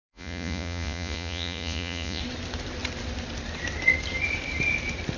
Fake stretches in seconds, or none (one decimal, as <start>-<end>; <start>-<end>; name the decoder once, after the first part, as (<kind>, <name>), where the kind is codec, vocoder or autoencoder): 0.0-2.2 (vocoder, Vocos)